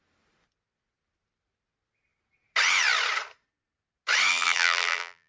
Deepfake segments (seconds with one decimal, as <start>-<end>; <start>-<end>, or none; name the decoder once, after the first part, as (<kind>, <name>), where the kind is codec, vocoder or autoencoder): 4.3-5.3 (vocoder, BigVGAN v2)